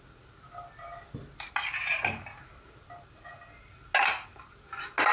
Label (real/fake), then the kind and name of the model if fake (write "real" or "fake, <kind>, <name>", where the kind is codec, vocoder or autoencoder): real